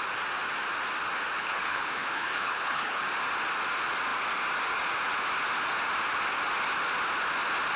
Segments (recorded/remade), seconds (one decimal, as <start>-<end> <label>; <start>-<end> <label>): 0.0-1.4 recorded; 1.4-3.0 remade; 3.0-7.8 recorded